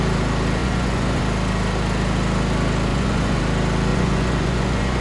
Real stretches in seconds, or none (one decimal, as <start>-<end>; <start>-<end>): 0.0-0.6; 1.2-2.9; 3.4-3.9